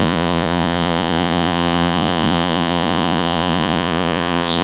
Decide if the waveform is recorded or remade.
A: remade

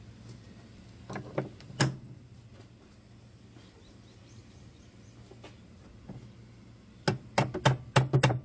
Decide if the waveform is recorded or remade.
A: recorded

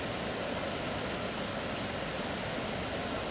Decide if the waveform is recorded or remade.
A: recorded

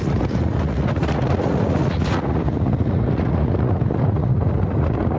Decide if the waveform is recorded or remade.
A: remade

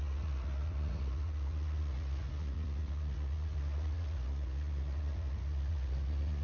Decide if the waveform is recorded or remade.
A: remade